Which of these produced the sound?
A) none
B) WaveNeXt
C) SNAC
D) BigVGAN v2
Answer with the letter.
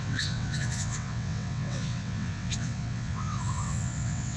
B